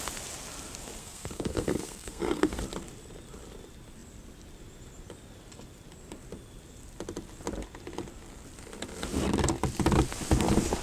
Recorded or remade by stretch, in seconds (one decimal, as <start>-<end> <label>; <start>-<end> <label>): 0.0-1.0 recorded; 1.0-2.6 remade; 2.6-10.8 recorded